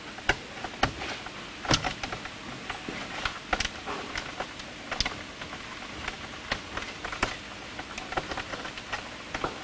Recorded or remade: recorded